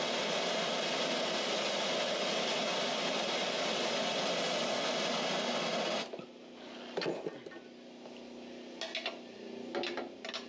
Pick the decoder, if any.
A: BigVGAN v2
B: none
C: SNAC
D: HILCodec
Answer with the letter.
B